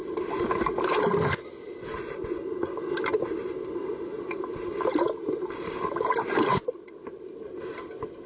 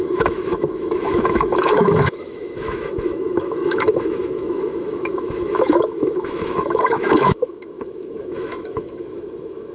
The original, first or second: first